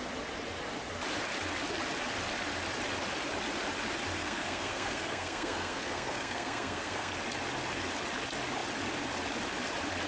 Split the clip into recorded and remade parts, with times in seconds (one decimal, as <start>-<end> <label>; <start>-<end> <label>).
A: 0.0-4.2 recorded; 4.2-7.1 remade; 7.1-10.1 recorded